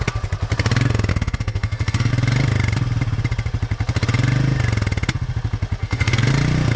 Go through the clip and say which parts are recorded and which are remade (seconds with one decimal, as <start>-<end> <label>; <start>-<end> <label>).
0.0-1.1 recorded; 1.1-2.1 remade; 2.1-5.8 recorded; 5.8-6.3 remade; 6.3-6.8 recorded